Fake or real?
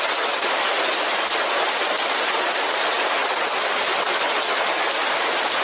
real